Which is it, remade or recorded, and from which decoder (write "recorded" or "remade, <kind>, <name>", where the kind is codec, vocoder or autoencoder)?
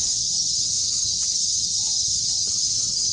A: remade, vocoder, HiFi-GAN